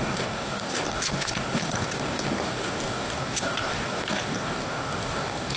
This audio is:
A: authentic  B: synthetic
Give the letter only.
B